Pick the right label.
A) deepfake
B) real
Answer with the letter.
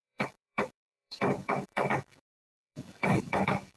A